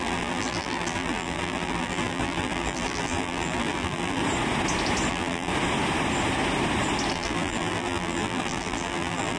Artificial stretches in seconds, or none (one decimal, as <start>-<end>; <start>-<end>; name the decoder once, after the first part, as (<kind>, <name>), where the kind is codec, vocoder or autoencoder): 0.0-4.2 (vocoder, BigVGAN v2); 5.1-5.5; 7.1-9.4